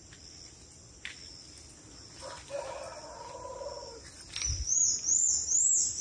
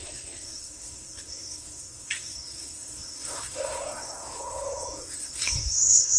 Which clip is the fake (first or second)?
second